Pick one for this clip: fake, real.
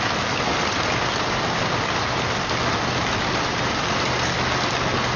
real